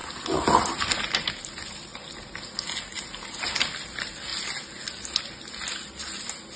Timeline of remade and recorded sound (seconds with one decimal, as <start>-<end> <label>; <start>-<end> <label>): 0.0-1.4 recorded; 1.4-1.9 remade; 1.9-3.4 recorded; 3.4-4.3 remade; 4.3-6.6 recorded